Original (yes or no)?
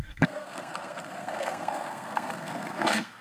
no